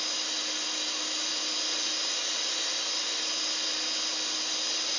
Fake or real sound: real